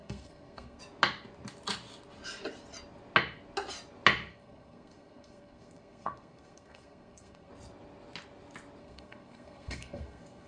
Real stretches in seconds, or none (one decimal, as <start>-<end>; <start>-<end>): 0.8-4.3; 7.5-8.8